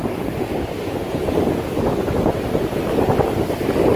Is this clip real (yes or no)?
yes